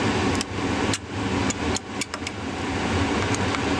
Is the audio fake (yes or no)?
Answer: no